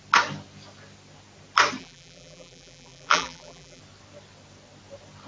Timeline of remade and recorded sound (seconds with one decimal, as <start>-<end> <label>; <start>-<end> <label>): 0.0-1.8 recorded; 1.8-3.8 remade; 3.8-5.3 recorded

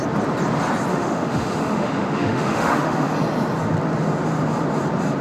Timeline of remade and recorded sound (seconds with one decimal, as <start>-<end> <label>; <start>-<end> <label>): 0.0-0.9 recorded; 0.9-3.1 remade; 3.1-5.2 recorded

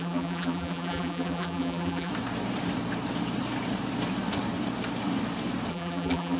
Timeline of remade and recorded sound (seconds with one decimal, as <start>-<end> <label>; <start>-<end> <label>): 0.0-2.1 remade; 2.1-5.7 recorded; 5.7-6.4 remade